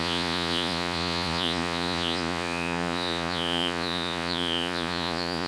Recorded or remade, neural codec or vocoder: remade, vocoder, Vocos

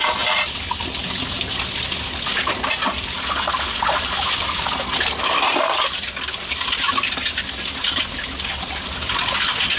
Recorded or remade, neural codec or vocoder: recorded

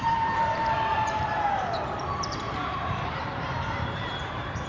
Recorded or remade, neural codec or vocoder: remade, vocoder, BigVGAN v2